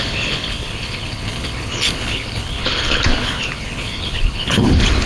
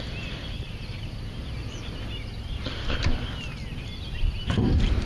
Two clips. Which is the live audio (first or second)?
second